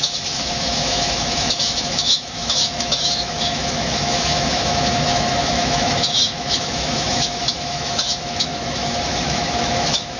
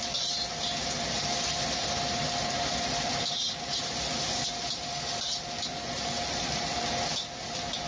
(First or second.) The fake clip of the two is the first